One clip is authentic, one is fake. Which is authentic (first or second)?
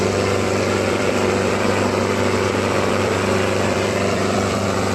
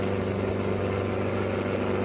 second